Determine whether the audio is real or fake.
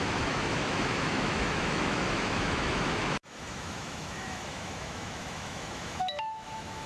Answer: fake